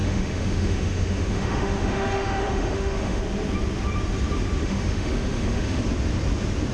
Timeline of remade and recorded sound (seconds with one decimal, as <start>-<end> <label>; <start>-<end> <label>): 0.0-3.2 remade; 3.2-4.6 recorded; 4.6-5.8 remade; 5.8-6.7 recorded